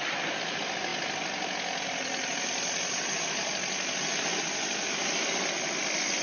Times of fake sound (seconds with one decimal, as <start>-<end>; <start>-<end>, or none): none